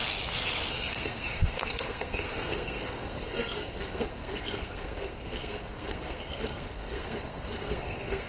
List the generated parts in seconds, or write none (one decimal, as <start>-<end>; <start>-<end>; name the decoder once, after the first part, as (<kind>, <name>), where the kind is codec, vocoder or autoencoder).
0.7-8.3 (codec, SNAC)

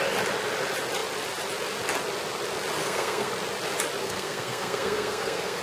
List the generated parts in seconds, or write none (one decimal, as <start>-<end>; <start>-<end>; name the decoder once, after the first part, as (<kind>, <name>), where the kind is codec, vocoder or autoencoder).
2.8-3.3 (codec, SNAC); 4.0-5.6

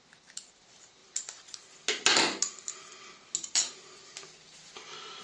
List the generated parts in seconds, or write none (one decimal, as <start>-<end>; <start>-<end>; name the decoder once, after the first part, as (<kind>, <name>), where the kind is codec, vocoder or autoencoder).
none

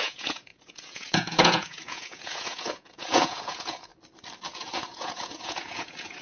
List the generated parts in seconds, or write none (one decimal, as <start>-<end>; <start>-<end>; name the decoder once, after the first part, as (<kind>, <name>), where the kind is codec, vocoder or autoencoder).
0.0-3.9 (vocoder, Vocos); 4.4-6.2

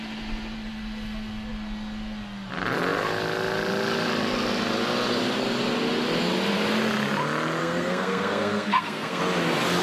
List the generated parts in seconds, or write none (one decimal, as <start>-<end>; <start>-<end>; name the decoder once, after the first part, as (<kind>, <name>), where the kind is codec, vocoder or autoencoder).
7.6-9.2 (codec, SNAC)

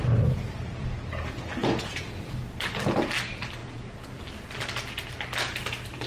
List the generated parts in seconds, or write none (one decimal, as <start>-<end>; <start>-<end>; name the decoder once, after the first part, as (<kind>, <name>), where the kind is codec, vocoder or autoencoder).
1.6-2.3 (vocoder, Vocos); 3.6-4.2

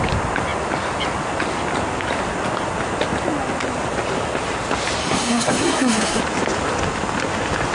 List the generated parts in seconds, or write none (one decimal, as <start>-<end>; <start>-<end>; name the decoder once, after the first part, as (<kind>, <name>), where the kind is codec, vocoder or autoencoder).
5.0-6.2 (codec, SNAC)

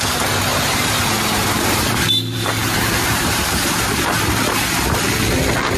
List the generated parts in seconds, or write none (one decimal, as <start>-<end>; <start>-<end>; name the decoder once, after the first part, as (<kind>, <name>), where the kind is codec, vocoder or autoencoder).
0.5-4.0 (vocoder, BigVGAN v2)